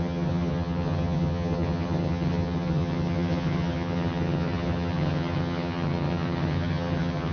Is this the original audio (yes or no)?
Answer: no